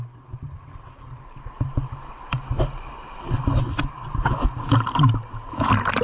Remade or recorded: recorded